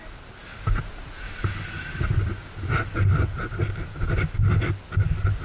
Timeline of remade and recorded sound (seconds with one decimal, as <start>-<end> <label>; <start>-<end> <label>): 0.0-5.4 recorded